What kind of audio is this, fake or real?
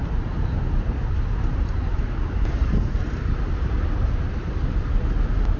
real